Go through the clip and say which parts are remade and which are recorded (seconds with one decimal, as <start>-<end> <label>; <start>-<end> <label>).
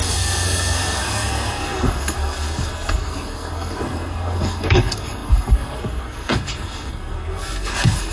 0.0-8.1 remade